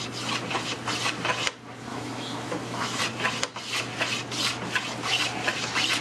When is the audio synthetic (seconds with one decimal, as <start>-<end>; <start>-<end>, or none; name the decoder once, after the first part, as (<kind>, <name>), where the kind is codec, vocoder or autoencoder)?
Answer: 1.9-3.0 (autoencoder, DAC-VAE)